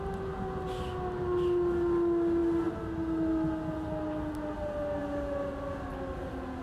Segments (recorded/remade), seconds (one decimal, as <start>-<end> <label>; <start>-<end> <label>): 0.0-6.6 recorded